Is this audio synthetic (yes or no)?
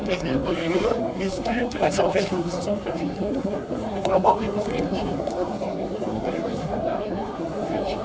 yes